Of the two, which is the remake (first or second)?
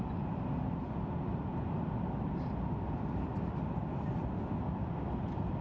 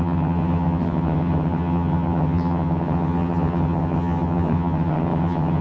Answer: second